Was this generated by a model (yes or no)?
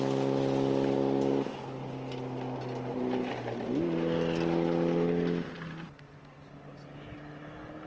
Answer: no